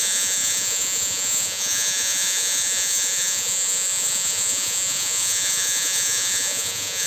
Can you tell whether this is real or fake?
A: fake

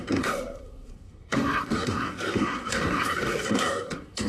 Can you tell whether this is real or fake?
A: fake